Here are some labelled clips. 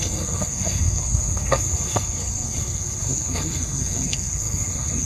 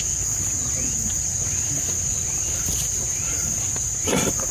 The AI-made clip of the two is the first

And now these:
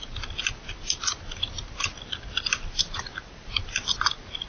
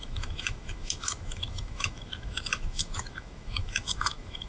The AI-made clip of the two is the second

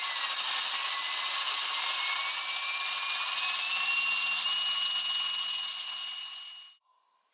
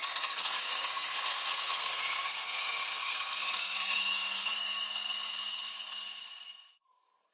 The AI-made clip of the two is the second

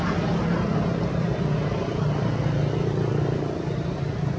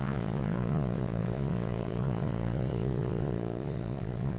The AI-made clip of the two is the second